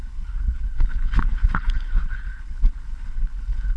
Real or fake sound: fake